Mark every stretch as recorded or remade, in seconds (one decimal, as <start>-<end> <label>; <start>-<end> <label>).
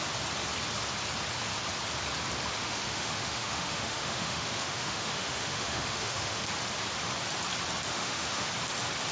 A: 0.0-2.6 recorded; 2.6-6.4 remade; 6.4-7.9 recorded; 7.9-8.5 remade; 8.5-9.1 recorded